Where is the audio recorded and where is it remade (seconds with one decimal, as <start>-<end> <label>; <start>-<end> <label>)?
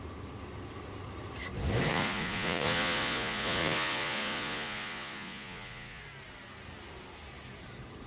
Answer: 0.0-1.9 recorded; 1.9-6.0 remade; 6.0-8.1 recorded